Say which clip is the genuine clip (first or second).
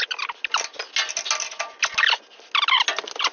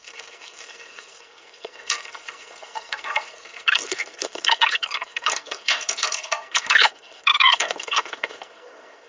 first